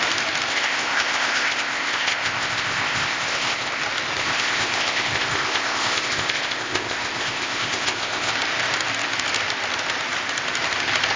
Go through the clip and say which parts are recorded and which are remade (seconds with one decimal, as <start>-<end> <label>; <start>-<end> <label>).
0.0-0.5 recorded; 0.5-3.8 remade; 3.8-4.2 recorded; 4.2-8.3 remade; 8.3-11.2 recorded